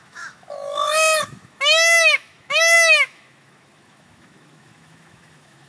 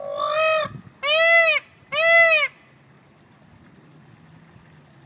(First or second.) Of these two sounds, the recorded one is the second